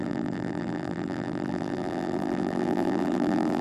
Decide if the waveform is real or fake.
fake